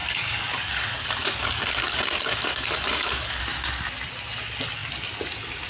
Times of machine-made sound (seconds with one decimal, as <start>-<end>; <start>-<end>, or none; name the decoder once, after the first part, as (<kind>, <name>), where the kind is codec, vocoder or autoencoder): 0.0-3.4 (codec, DAC)